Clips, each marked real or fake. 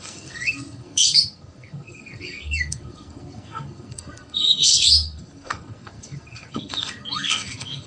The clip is fake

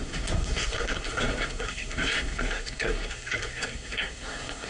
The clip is fake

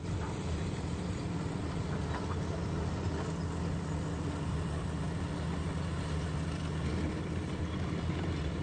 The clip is real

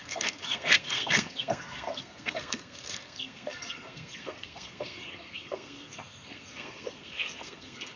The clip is fake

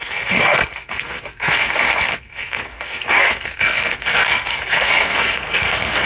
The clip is fake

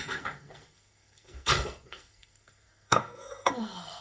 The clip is fake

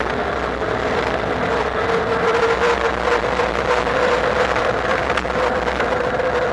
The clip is real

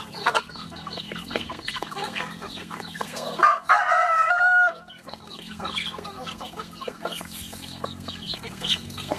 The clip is fake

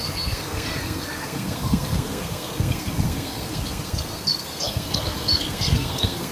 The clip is fake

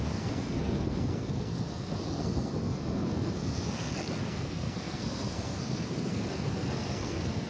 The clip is fake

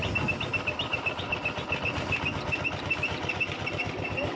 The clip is real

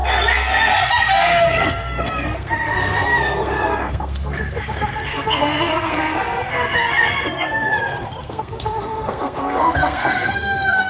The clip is fake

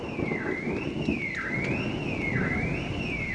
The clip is real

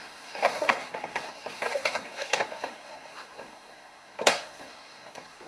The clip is fake